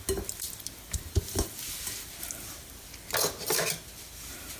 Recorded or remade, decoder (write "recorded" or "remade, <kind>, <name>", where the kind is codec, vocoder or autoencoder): recorded